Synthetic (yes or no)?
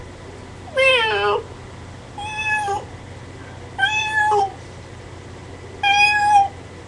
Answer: no